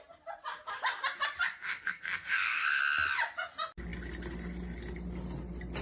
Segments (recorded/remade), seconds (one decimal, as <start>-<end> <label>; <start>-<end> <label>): 0.0-1.6 recorded; 1.6-2.8 remade; 2.8-5.8 recorded